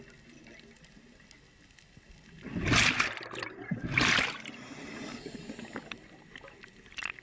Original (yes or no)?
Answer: yes